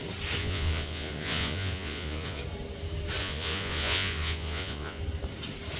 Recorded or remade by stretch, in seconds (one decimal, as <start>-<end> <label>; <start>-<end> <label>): 0.0-0.4 recorded; 0.4-2.4 remade; 2.4-3.2 recorded; 3.2-5.0 remade; 5.0-5.8 recorded